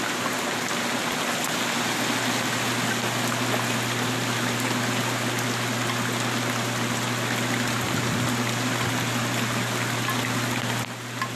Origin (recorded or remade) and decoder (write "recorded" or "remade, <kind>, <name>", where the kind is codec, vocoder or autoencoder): recorded